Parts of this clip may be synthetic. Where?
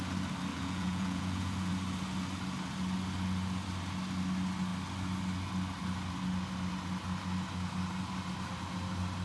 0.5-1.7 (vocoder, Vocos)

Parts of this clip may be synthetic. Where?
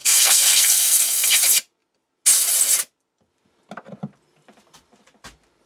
0.0-1.4 (codec, SNAC)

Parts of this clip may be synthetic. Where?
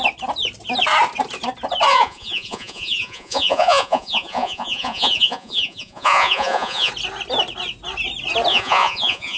1.9-6.9 (vocoder, Vocos); 8.5-9.4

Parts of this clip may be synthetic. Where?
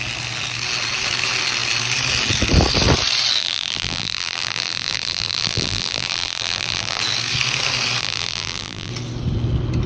3.4-7.0 (vocoder, BigVGAN v2); 8.0-8.9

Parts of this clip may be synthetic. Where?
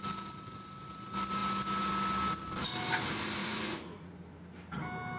3.4-4.1 (vocoder, Vocos)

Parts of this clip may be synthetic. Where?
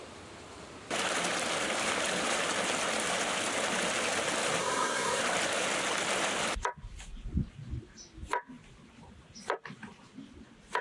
4.6-5.2 (codec, SNAC)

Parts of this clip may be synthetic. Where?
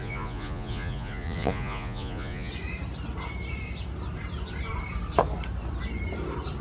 0.0-2.5 (vocoder, Vocos)